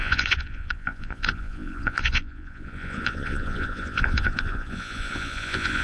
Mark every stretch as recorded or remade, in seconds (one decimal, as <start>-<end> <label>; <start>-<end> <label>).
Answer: 0.0-5.8 remade